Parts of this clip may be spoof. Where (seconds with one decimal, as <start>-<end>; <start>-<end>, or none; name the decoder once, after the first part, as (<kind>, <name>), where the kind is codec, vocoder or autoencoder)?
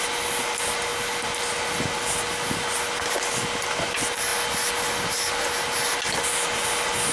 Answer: none